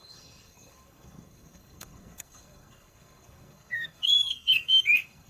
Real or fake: fake